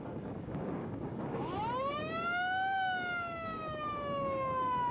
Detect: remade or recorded remade